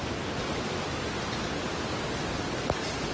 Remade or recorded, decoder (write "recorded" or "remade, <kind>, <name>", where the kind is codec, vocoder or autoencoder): recorded